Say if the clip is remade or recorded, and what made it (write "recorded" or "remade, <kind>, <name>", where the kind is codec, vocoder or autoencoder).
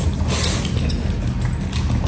recorded